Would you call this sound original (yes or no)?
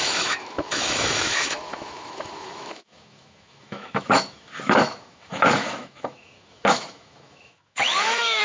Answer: no